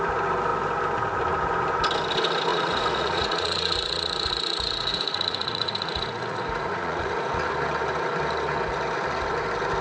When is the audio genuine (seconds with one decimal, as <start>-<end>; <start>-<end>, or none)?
0.0-2.5; 7.5-9.8